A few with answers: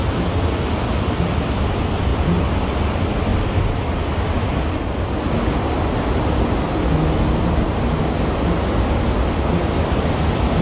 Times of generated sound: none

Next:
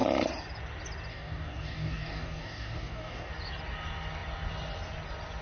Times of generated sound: 1.1-3.3 (codec, DAC)

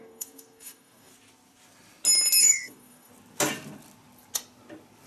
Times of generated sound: 0.0-1.1 (codec, DAC); 2.4-3.1

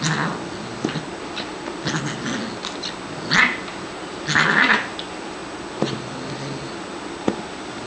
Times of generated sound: none

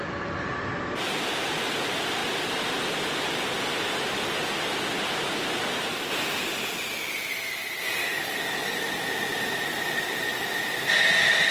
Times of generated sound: 8.0-8.9 (codec, DAC)

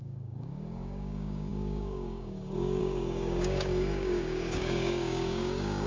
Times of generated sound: 0.0-5.9 (codec, DAC)